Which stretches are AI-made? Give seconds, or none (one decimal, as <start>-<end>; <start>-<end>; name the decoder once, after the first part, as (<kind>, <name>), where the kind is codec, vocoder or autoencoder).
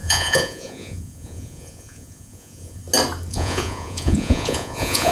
0.0-2.8 (vocoder, Vocos); 3.3-5.1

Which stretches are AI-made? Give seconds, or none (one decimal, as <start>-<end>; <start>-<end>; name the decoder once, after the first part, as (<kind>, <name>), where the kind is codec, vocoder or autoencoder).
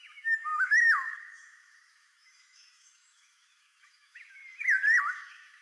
0.0-4.4 (autoencoder, DAC-VAE); 5.0-5.6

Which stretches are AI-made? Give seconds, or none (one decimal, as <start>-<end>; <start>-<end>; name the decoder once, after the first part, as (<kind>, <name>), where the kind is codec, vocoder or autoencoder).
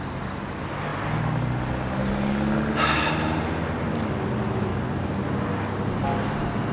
none